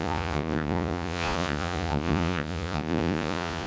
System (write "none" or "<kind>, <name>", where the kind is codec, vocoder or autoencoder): vocoder, Vocos